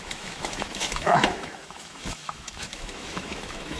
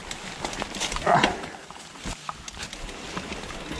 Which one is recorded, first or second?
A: second